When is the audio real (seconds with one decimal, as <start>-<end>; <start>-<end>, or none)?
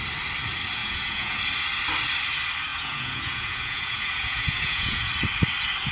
0.0-0.8; 1.4-2.7; 5.1-5.9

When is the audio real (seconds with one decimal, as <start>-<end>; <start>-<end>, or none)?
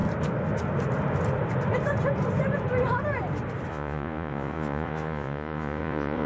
0.0-3.7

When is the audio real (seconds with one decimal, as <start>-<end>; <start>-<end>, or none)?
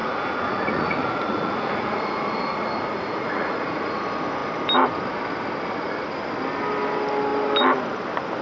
4.0-8.4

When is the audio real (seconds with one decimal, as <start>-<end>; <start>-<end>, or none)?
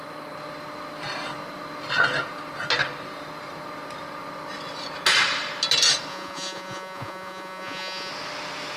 0.0-6.1; 8.1-8.8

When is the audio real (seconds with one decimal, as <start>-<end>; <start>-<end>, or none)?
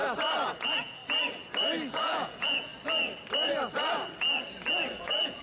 0.0-0.6; 1.0-1.9; 2.7-5.0